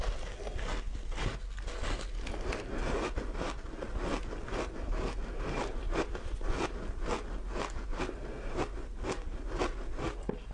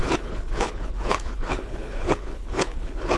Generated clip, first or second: second